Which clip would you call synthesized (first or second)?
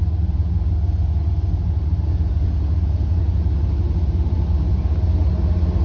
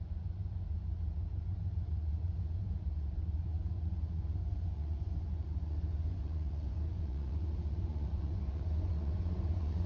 second